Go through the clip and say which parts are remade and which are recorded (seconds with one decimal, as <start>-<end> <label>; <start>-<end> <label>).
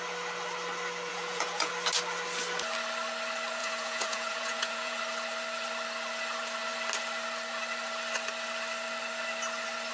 0.0-1.1 recorded; 1.1-1.7 remade; 1.7-3.6 recorded; 3.6-5.0 remade; 5.0-9.9 recorded